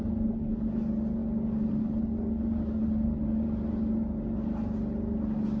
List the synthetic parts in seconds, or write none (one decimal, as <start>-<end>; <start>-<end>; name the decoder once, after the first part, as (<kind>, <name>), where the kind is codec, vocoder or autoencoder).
none